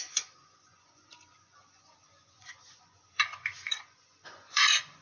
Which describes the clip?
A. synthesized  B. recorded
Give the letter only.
A